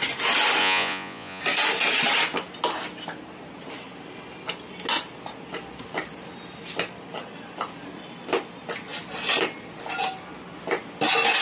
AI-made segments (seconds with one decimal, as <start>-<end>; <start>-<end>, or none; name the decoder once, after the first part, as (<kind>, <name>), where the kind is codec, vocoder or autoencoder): 0.6-1.4 (vocoder, Vocos)